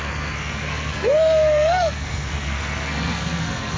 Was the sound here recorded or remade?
remade